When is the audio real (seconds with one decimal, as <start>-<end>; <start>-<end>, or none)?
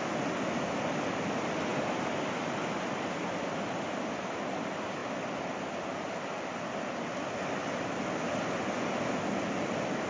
0.0-10.1